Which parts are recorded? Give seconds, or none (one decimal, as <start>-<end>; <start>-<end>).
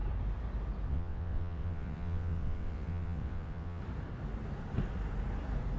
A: 0.0-0.9; 3.8-5.8